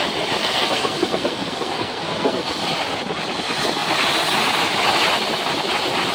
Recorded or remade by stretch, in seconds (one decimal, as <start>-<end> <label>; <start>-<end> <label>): 0.0-0.4 recorded; 0.4-2.5 remade; 2.5-6.1 recorded